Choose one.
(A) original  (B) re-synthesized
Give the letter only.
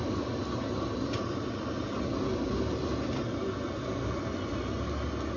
A